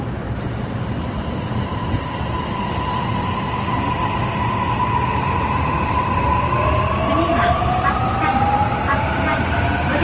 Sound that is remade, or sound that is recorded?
recorded